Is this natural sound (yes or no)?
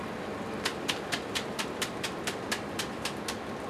yes